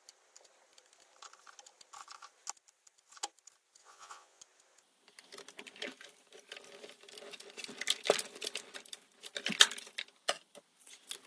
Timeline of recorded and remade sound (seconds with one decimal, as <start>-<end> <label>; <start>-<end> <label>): 0.0-3.8 recorded; 3.8-4.4 remade; 4.4-11.3 recorded